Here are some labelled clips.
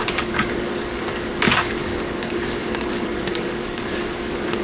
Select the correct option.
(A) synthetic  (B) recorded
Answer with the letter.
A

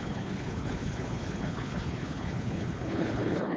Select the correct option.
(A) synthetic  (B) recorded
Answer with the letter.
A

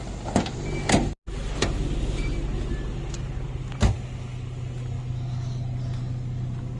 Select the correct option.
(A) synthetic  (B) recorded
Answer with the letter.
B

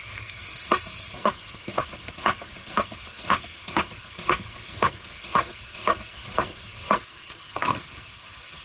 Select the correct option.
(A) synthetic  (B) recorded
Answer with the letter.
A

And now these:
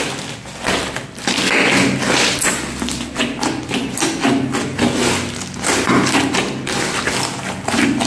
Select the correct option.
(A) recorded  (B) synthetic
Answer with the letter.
A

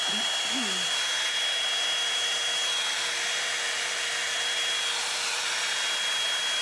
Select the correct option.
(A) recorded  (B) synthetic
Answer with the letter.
A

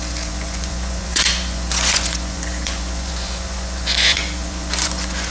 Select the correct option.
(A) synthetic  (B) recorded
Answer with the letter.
A